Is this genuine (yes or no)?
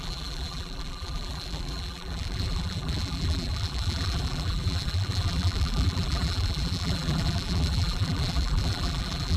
no